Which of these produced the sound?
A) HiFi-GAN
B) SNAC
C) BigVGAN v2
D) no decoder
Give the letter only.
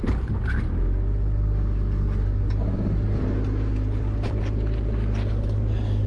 D